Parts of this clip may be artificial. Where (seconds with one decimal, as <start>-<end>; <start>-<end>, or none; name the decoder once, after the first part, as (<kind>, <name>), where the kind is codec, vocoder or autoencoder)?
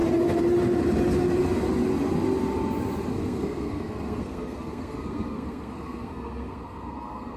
3.1-7.4 (codec, SNAC)